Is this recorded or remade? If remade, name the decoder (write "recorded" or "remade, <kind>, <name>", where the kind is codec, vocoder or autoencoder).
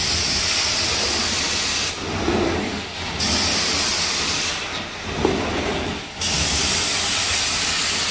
recorded